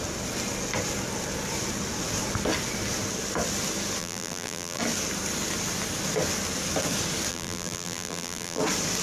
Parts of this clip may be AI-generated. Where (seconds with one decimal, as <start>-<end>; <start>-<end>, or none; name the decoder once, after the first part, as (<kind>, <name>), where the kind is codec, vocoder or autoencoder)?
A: 4.0-4.8 (vocoder, BigVGAN v2); 7.3-8.6